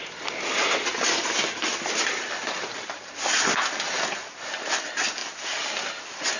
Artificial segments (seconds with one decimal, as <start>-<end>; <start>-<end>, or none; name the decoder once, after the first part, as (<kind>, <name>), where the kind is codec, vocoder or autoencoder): none